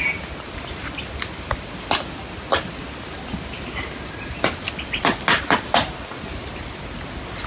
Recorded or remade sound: recorded